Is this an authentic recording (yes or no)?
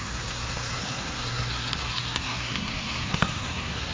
no